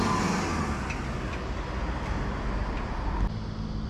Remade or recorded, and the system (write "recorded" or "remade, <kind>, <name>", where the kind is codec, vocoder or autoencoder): recorded